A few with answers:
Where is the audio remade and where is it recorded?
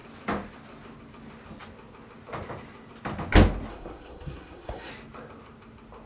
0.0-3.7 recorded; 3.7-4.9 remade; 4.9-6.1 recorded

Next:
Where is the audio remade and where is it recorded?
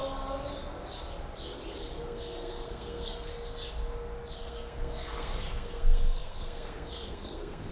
0.0-2.0 recorded; 2.0-3.3 remade; 3.3-4.4 recorded; 4.4-7.7 remade